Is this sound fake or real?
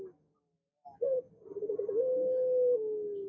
real